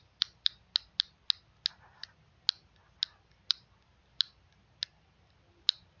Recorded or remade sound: recorded